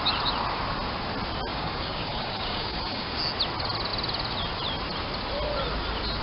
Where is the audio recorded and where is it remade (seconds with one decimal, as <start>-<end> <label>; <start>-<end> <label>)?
0.0-1.5 recorded; 1.5-3.2 remade; 3.2-6.2 recorded